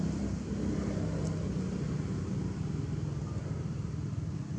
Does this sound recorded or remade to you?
recorded